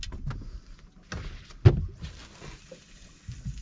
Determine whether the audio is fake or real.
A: real